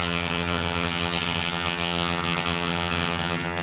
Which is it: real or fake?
fake